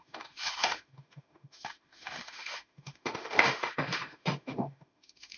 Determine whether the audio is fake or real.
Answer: fake